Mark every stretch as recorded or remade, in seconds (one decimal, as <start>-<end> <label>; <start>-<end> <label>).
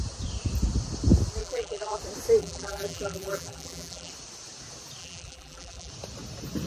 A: 0.0-1.4 recorded; 1.4-2.0 remade; 2.0-2.4 recorded; 2.4-4.1 remade; 4.1-5.0 recorded; 5.0-5.9 remade; 5.9-6.7 recorded